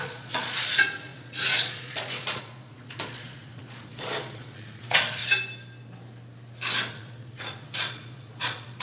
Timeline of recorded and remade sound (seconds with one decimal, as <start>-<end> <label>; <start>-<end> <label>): 0.0-5.2 remade; 5.2-6.9 recorded; 6.9-8.8 remade